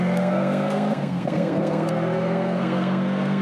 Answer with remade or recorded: remade